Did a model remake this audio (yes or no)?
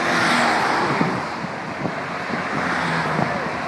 no